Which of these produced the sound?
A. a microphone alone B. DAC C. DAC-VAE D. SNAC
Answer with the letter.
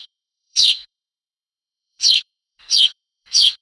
D